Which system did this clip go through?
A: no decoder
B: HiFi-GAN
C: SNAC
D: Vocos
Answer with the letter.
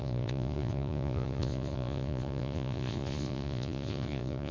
D